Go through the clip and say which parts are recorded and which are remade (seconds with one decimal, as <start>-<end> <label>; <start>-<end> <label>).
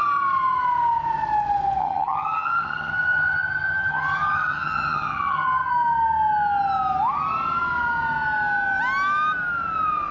0.0-1.8 recorded; 1.8-5.7 remade; 5.7-10.1 recorded